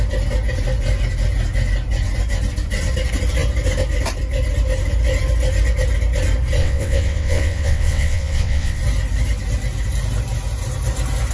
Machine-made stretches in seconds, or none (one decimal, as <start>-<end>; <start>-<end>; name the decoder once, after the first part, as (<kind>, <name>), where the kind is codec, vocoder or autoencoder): 6.6-8.8 (vocoder, WaveNeXt)